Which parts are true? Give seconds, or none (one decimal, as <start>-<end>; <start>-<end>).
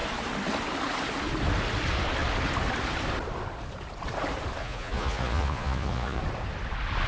0.0-4.6; 6.2-7.1